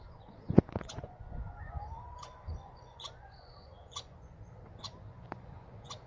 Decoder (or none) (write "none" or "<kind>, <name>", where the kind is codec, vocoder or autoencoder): vocoder, Vocos